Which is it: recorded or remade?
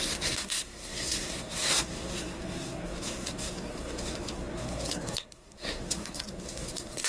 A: remade